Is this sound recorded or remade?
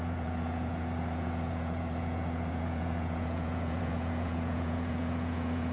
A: remade